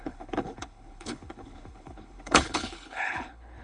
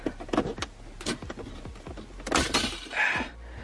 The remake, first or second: first